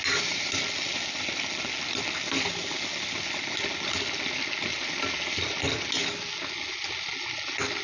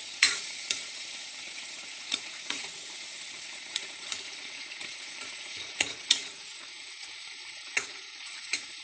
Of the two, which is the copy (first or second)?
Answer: second